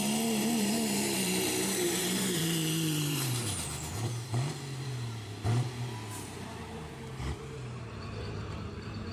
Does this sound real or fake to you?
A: fake